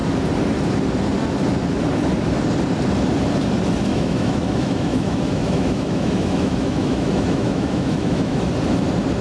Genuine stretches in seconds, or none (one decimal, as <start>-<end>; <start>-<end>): 0.0-3.9; 8.5-9.2